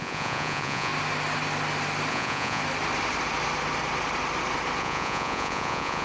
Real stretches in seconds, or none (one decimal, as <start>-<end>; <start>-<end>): 0.9-2.1; 2.6-4.8